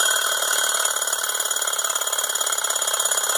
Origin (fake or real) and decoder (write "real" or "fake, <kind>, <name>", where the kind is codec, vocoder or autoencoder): real